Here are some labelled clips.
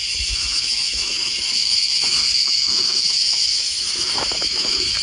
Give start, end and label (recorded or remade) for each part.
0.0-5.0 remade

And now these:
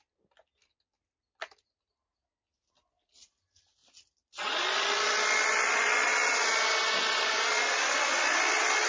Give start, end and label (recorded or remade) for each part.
0.0-8.9 recorded

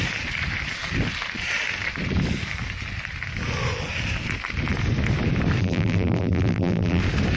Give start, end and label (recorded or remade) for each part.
0.0-5.6 recorded; 5.6-7.0 remade; 7.0-7.4 recorded

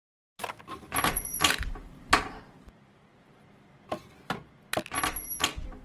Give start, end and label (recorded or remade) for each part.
0.0-0.4 recorded; 0.4-3.3 remade; 3.3-5.8 recorded

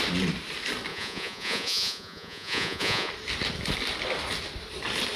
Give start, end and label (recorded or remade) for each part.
0.0-0.9 recorded; 0.9-3.1 remade; 3.1-5.2 recorded

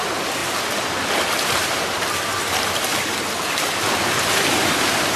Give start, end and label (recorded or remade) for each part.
0.0-5.2 recorded

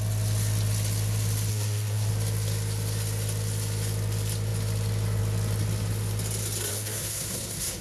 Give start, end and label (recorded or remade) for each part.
0.0-1.5 recorded; 1.5-2.1 remade; 2.1-6.7 recorded; 6.7-7.8 remade